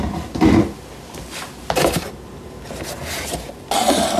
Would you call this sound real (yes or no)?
yes